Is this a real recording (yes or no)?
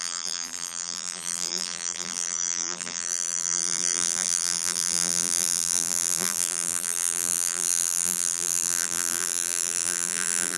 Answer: no